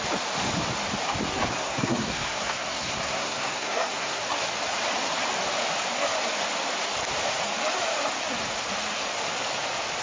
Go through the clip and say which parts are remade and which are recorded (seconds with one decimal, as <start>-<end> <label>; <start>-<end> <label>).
0.0-1.6 recorded; 1.6-4.2 remade; 4.2-10.0 recorded